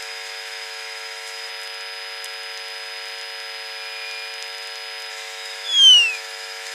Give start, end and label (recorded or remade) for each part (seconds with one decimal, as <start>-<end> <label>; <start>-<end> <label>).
0.0-1.5 remade; 1.5-5.1 recorded; 5.1-6.7 remade